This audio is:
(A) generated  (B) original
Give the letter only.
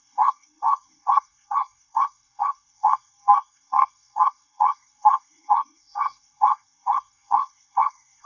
A